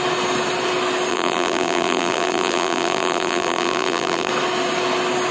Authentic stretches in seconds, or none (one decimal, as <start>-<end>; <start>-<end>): 0.0-1.1; 4.3-5.3